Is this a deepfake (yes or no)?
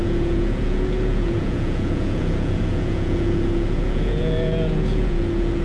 yes